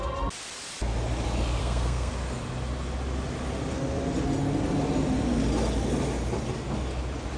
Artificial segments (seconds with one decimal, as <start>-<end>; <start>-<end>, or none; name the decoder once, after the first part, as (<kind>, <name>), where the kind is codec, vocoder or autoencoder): 1.6-2.1 (codec, SNAC)